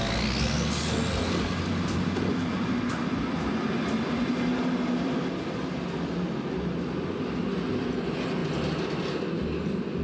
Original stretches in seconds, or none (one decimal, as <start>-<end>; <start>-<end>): 0.0-10.0